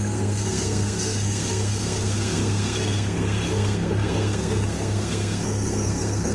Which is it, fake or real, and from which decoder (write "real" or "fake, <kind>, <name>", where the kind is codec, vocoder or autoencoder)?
fake, codec, SNAC